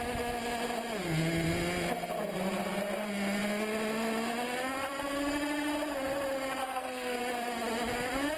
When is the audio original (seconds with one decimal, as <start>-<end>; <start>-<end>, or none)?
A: 0.0-6.6; 7.2-8.4